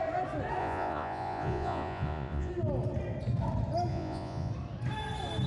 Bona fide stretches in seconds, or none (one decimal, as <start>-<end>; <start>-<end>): 0.0-0.6; 2.5-3.9; 4.5-5.5

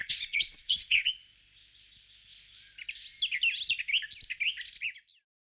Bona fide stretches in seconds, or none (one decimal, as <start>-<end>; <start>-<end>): 1.1-5.5

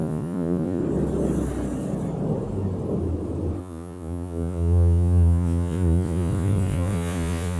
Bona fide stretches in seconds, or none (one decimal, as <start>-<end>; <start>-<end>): 0.8-3.6

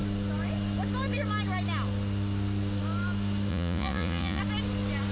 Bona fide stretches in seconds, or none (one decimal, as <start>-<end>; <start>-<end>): 0.0-3.5; 4.4-5.1